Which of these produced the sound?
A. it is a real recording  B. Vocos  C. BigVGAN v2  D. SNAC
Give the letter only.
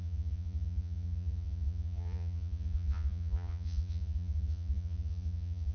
B